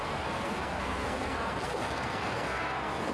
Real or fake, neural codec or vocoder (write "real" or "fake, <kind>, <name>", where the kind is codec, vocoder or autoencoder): fake, codec, SNAC